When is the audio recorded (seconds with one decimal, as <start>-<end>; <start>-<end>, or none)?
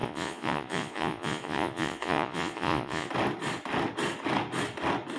3.1-5.2